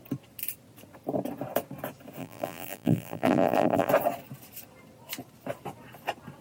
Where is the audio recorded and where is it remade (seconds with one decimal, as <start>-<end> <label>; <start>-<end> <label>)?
0.0-2.2 recorded; 2.2-3.9 remade; 3.9-6.4 recorded

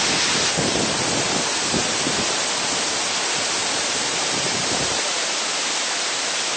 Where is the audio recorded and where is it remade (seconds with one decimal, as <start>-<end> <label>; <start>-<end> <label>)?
0.0-3.6 recorded; 3.6-5.4 remade; 5.4-6.6 recorded